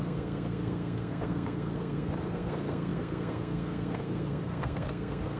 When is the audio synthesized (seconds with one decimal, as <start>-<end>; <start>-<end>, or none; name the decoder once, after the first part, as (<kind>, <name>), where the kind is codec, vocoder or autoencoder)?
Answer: 0.0-5.4 (codec, SNAC)